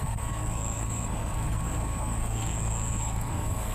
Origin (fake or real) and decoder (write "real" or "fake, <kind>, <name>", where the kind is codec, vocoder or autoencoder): fake, codec, SNAC